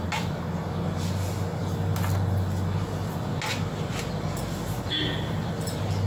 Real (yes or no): yes